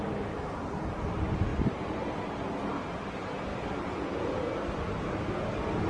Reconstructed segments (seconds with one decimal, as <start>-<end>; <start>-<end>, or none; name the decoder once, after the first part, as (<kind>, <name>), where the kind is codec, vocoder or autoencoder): none